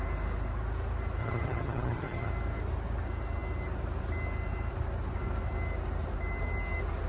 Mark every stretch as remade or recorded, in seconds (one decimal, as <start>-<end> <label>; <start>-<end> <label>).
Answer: 0.0-1.2 recorded; 1.2-2.3 remade; 2.3-7.1 recorded